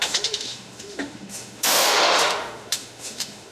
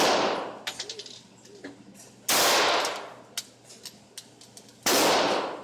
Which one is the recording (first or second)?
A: second